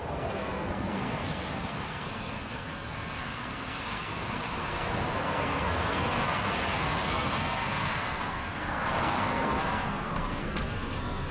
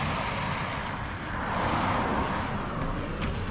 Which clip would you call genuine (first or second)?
second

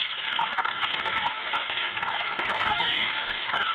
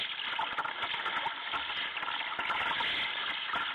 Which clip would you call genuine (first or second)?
second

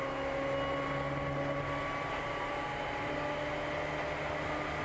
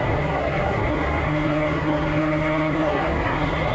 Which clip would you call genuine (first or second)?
first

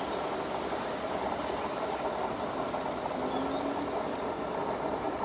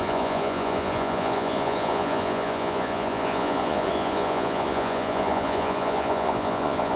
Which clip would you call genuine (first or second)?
first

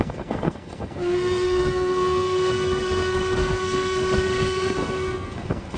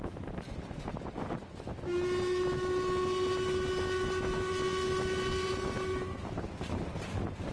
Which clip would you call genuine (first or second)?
second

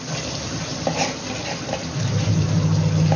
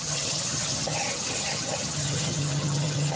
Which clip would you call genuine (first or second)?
first